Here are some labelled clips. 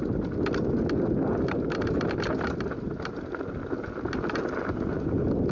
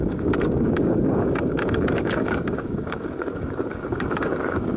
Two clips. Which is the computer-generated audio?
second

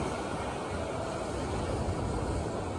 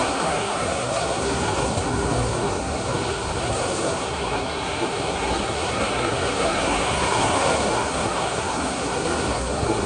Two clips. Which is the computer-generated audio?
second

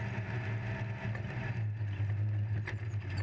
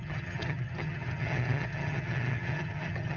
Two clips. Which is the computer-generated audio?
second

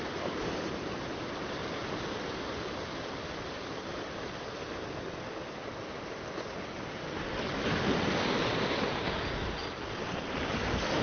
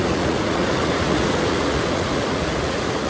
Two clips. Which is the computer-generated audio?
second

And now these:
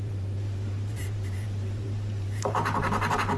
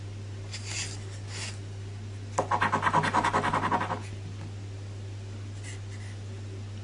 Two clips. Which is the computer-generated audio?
first